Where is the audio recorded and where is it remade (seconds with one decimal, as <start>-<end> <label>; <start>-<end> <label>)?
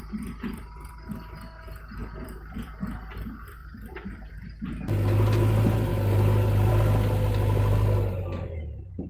0.0-2.0 recorded; 2.0-2.7 remade; 2.7-3.6 recorded; 3.6-4.3 remade; 4.3-9.1 recorded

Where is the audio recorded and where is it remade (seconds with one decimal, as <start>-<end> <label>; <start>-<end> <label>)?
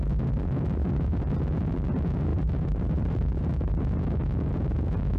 0.0-2.3 recorded; 2.3-3.7 remade; 3.7-5.2 recorded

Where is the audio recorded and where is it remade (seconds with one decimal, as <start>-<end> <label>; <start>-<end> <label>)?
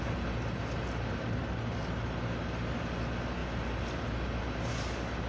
0.0-5.3 recorded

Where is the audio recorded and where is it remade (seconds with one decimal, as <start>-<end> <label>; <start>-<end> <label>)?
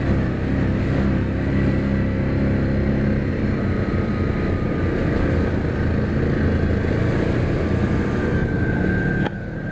0.0-3.3 recorded; 3.3-6.2 remade; 6.2-9.7 recorded